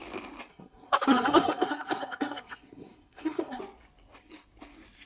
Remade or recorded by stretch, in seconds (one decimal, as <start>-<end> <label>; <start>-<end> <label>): 0.0-0.5 recorded; 0.5-3.6 remade; 3.6-5.1 recorded